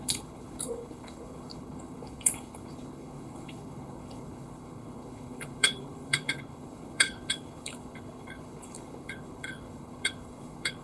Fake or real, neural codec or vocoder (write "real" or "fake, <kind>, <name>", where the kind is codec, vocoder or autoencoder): fake, codec, HILCodec